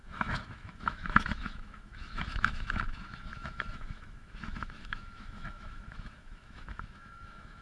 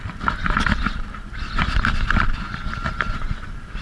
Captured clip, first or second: second